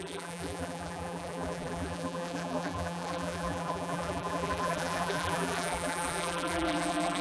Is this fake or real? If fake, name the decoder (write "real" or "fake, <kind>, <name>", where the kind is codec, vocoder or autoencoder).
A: fake, vocoder, BigVGAN v2